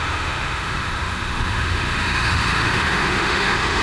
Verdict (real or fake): fake